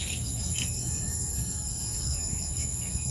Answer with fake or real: fake